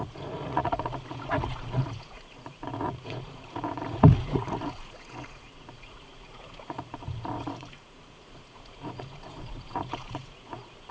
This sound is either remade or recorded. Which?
remade